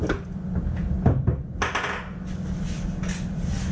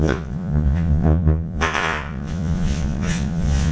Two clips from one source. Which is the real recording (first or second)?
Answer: first